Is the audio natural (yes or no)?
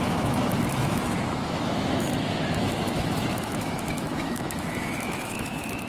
no